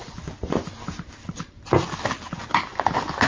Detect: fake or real real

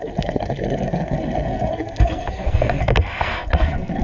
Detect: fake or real fake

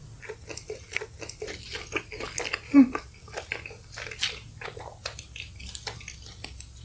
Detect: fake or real real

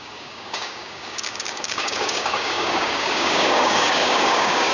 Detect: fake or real fake